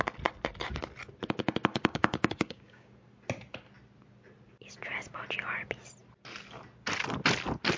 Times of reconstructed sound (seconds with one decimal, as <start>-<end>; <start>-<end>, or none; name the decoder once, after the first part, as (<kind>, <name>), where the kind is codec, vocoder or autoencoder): 1.7-2.9 (codec, DAC)